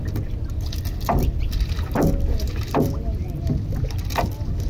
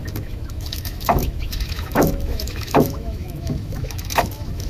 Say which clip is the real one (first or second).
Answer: first